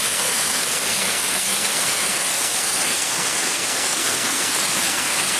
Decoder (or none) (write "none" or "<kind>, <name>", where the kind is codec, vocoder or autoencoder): codec, SNAC